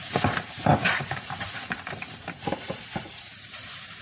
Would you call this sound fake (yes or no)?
yes